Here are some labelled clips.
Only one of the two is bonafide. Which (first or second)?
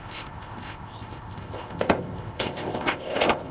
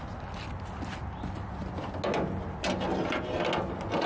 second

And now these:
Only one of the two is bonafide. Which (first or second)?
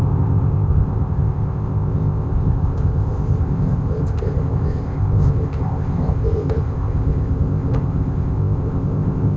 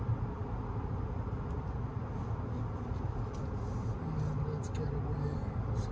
second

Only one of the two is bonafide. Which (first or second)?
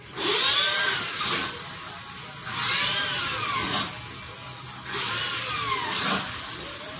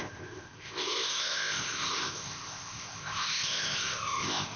first